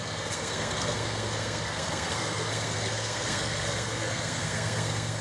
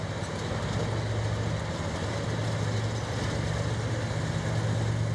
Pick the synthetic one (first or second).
first